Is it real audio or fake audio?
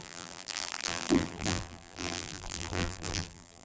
fake